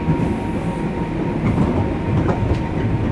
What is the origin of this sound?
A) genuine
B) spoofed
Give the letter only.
A